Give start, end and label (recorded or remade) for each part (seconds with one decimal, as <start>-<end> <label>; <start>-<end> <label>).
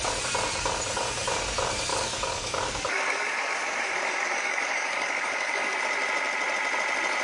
0.0-1.9 recorded; 1.9-5.8 remade; 5.8-7.2 recorded